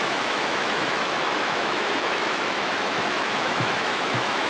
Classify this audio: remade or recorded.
remade